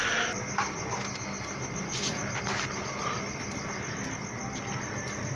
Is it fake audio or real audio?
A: real